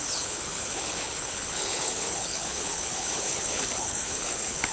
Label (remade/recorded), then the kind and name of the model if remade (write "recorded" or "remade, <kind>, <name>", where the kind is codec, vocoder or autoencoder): remade, codec, HILCodec